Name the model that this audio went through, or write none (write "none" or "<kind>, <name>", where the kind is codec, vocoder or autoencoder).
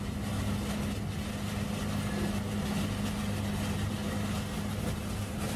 none